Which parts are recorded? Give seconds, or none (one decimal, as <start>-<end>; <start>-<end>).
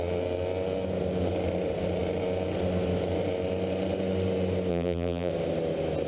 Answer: 0.0-4.7; 5.3-6.1